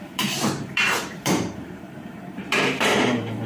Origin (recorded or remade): remade